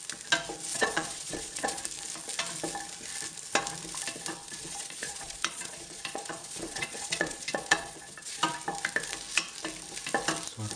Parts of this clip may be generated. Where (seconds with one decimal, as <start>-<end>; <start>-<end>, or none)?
0.7-1.8; 4.4-8.4